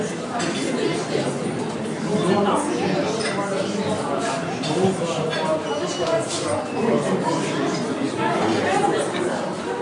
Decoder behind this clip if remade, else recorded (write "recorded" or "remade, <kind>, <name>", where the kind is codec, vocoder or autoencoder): recorded